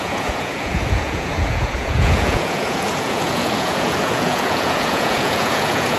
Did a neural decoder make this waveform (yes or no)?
yes